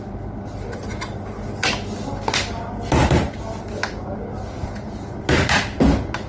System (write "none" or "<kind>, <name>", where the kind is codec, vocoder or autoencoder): none